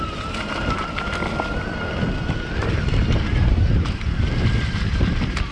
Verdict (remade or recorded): recorded